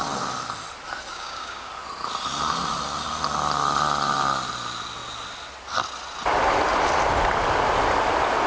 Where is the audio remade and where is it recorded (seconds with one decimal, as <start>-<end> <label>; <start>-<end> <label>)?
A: 0.0-1.1 recorded; 1.1-1.7 remade; 1.7-8.5 recorded